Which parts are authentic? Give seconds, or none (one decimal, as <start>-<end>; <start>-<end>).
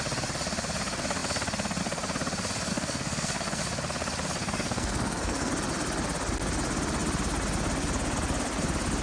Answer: 0.0-2.7; 3.6-4.4; 5.5-9.0